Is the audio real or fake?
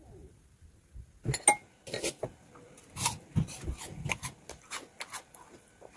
real